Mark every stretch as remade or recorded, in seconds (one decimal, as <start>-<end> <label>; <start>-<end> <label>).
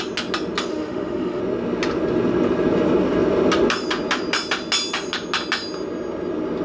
0.0-0.7 recorded; 0.7-1.4 remade; 1.4-6.6 recorded